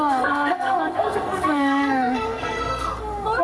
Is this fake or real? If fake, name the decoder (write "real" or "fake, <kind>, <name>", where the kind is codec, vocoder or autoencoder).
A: fake, codec, SNAC